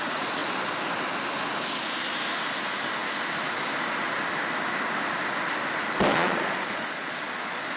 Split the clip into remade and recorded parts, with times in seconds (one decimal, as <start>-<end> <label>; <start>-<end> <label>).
0.0-6.1 recorded; 6.1-7.8 remade